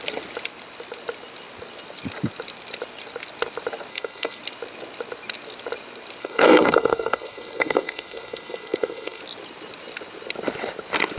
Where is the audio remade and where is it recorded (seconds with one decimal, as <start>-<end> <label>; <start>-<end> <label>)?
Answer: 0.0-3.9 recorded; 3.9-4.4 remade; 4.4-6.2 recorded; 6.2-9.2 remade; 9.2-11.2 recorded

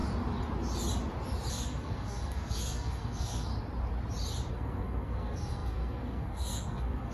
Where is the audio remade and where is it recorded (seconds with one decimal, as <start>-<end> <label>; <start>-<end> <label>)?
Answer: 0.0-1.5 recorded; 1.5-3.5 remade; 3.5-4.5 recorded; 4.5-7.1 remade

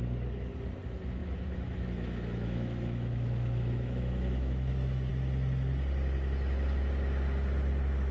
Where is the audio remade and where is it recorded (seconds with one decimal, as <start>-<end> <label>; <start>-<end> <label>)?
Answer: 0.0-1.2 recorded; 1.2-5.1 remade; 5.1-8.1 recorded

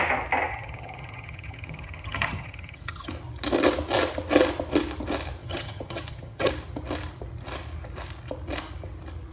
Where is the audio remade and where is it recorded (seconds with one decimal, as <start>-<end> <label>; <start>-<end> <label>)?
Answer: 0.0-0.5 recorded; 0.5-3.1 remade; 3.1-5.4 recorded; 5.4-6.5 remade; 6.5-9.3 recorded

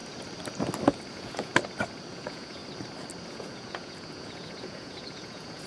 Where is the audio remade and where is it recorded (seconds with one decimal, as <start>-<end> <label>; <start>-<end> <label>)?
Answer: 0.0-1.1 recorded; 1.1-1.5 remade; 1.5-2.1 recorded; 2.1-2.6 remade; 2.6-3.3 recorded; 3.3-5.7 remade

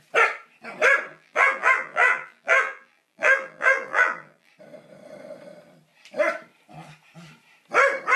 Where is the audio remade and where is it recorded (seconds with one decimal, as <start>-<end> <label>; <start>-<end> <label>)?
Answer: 0.0-1.1 recorded; 1.1-4.5 remade; 4.5-8.2 recorded